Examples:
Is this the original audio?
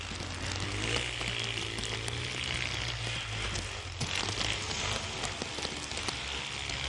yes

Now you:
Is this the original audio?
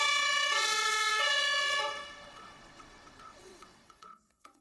no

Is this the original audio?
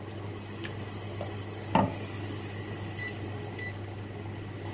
yes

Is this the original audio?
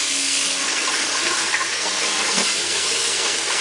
no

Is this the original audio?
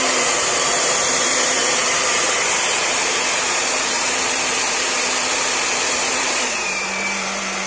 no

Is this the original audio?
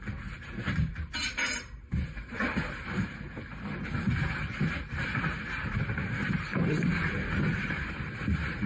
no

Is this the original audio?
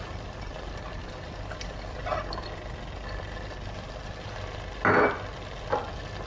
yes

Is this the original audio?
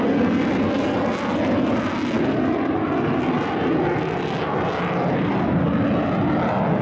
yes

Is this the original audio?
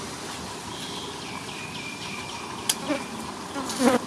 yes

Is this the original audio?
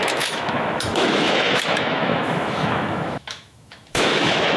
no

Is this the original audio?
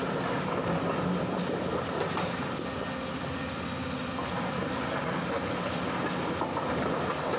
yes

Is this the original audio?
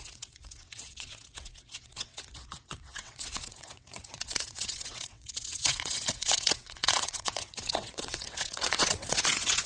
no